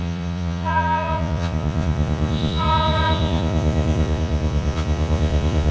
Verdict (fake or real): fake